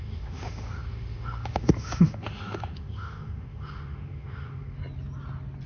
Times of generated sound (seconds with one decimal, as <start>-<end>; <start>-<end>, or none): 0.0-4.8